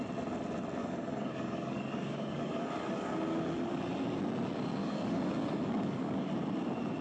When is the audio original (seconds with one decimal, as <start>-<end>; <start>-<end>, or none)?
0.0-0.8; 3.8-4.8; 6.3-7.0